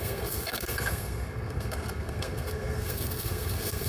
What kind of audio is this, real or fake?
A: fake